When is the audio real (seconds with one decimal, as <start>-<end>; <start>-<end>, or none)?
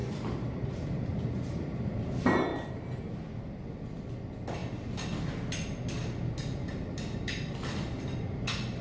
0.7-2.5; 3.5-8.8